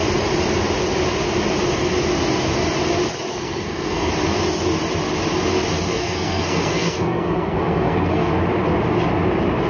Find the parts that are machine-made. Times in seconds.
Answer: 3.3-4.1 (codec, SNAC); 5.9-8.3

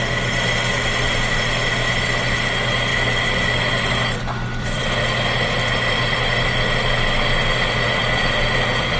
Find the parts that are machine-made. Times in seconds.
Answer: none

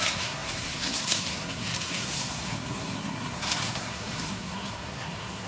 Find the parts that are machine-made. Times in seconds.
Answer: 0.0-5.5 (codec, SNAC)

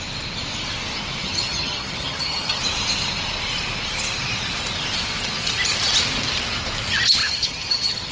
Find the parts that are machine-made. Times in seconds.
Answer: 1.2-2.6 (vocoder, HiFi-GAN); 7.2-8.1